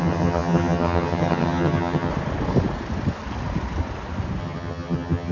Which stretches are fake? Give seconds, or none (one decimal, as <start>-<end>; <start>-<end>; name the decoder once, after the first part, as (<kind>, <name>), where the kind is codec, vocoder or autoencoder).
0.0-2.1 (vocoder, HiFi-GAN); 4.4-5.3